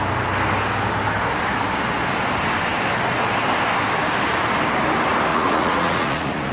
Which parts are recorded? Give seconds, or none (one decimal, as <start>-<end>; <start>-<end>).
0.0-5.3